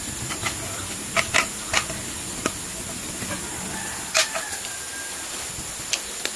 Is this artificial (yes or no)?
no